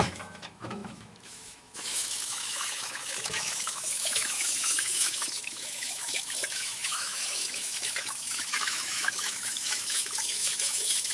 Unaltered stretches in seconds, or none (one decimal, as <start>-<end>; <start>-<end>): none